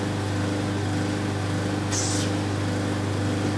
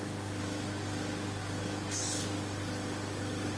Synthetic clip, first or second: second